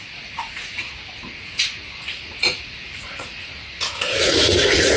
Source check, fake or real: fake